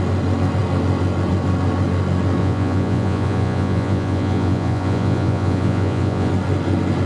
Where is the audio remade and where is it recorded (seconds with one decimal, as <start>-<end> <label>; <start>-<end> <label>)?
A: 0.0-2.4 recorded; 2.4-6.3 remade; 6.3-7.1 recorded